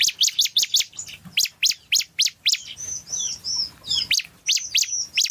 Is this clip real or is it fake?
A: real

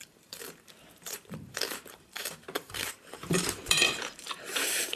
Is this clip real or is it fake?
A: fake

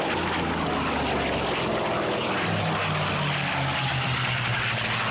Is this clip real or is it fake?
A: real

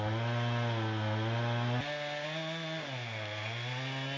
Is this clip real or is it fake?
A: real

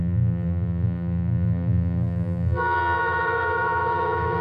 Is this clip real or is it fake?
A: fake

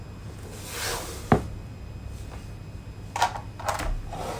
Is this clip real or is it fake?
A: real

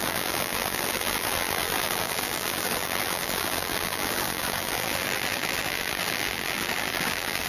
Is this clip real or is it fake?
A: fake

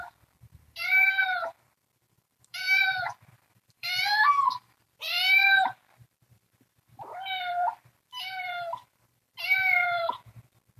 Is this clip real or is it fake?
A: fake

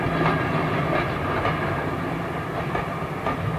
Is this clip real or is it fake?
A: fake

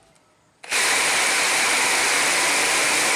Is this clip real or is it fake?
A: real